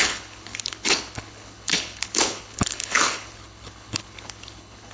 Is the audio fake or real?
fake